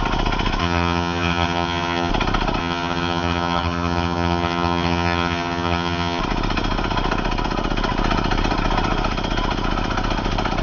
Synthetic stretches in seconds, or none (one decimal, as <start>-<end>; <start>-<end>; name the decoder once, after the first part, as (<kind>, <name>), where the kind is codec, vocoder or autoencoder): 0.6-2.1 (vocoder, HiFi-GAN); 2.6-6.2